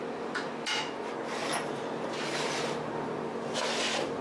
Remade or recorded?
recorded